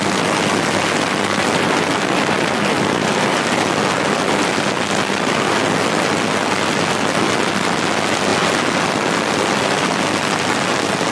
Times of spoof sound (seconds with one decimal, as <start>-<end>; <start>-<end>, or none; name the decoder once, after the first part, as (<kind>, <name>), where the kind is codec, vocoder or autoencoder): none